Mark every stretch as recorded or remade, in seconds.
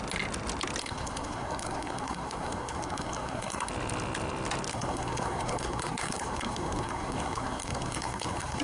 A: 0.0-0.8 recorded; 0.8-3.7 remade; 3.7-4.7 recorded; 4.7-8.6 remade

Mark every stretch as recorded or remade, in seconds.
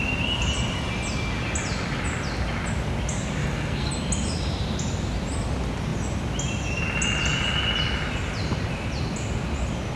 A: 0.0-3.4 recorded; 3.4-3.9 remade; 3.9-10.0 recorded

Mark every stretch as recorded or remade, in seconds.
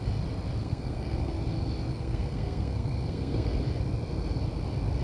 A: 0.0-0.6 recorded; 0.6-1.4 remade; 1.4-1.9 recorded; 1.9-3.6 remade; 3.6-5.0 recorded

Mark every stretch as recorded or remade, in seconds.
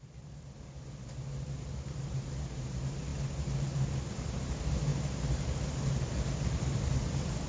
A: 0.0-7.5 recorded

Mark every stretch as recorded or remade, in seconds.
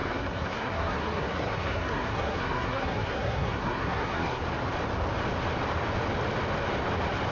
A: 0.0-4.4 remade; 4.4-7.3 recorded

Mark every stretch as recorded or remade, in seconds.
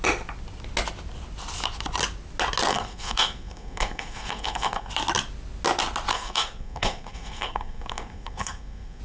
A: 0.0-2.7 recorded; 2.7-4.9 remade; 4.9-6.1 recorded; 6.1-9.0 remade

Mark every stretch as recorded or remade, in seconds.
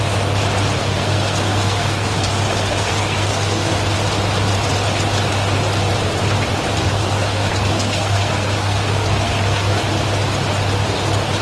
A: 0.0-0.8 recorded; 0.8-3.7 remade; 3.7-6.9 recorded; 6.9-9.8 remade; 9.8-11.4 recorded